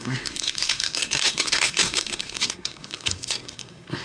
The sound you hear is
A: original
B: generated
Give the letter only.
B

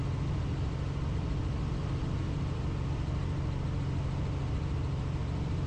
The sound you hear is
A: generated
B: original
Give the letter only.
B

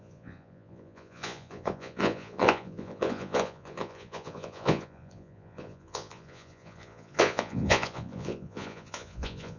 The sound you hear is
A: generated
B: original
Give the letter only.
A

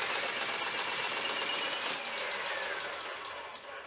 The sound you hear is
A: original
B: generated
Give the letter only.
A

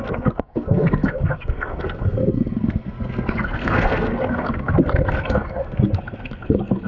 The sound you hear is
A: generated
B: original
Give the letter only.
A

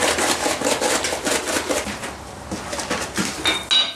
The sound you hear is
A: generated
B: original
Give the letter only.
B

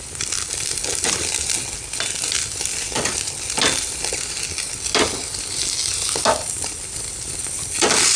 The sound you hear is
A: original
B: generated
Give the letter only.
A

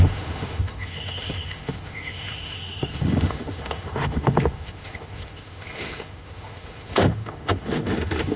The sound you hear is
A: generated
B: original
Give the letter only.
A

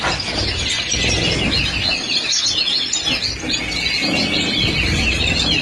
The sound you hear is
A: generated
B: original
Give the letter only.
B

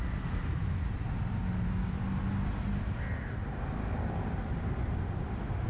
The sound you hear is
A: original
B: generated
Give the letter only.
A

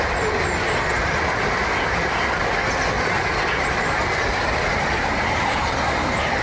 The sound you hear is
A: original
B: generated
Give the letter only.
A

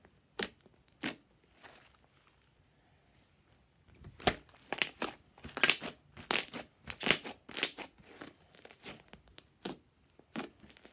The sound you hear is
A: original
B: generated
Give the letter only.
A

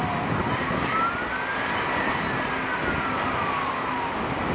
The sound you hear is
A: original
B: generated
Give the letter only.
A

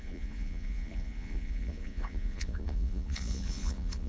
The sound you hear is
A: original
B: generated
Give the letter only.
B